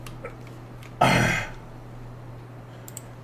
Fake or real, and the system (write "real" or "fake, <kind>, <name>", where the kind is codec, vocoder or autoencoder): real